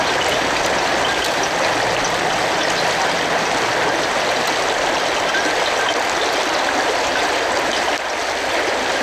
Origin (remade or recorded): recorded